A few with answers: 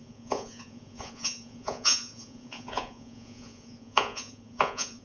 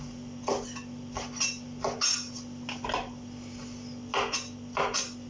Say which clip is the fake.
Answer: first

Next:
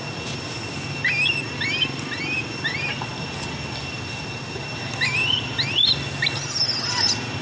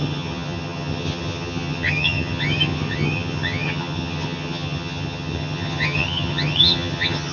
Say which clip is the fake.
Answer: second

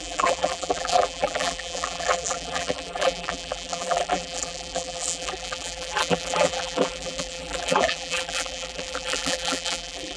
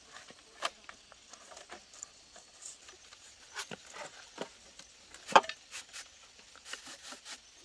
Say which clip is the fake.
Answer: first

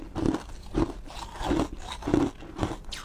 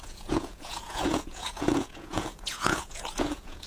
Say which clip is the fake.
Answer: second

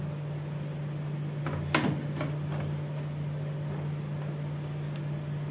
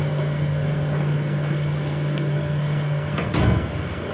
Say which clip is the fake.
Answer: second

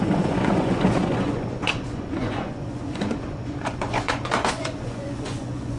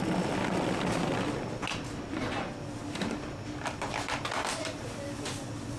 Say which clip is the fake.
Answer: first